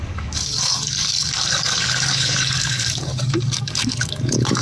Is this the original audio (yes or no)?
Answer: no